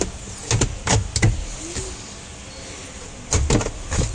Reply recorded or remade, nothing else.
recorded